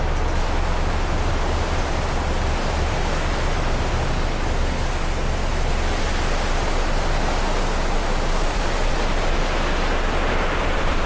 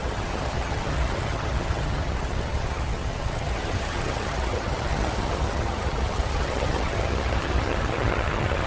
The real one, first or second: first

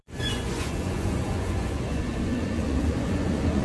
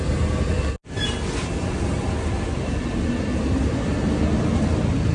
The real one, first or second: second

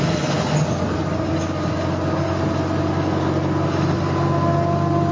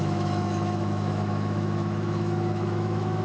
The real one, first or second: first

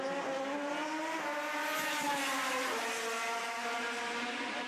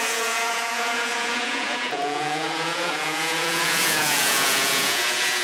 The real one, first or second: first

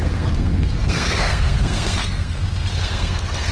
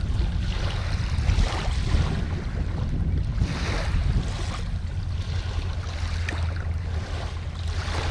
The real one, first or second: second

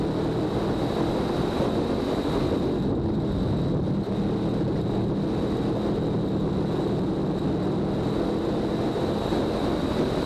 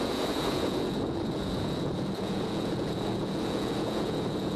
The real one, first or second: first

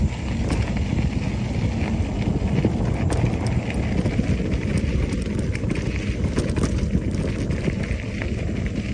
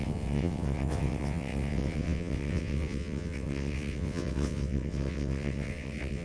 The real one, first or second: first